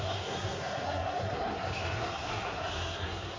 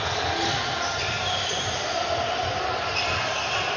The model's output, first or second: first